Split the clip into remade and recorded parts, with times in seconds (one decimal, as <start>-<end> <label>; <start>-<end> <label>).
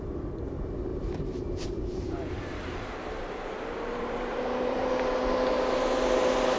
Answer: 0.0-0.9 recorded; 0.9-4.9 remade; 4.9-6.6 recorded